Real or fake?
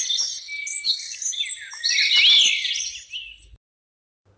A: real